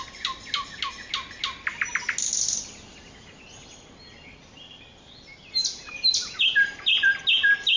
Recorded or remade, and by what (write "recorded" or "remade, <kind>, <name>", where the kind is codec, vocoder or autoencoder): recorded